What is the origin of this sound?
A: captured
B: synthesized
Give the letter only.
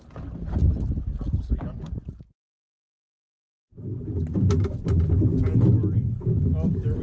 A